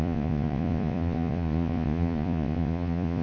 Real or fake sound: fake